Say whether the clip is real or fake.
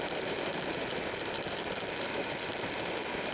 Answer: fake